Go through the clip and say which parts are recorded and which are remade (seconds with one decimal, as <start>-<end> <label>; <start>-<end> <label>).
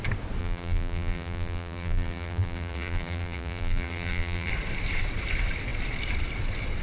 0.0-0.4 recorded; 0.4-4.5 remade; 4.5-6.8 recorded